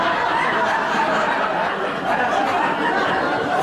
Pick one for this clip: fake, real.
real